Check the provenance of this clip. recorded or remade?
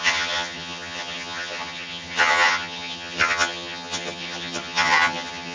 remade